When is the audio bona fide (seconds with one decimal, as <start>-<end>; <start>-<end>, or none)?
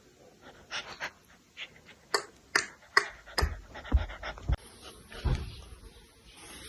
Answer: 0.0-6.7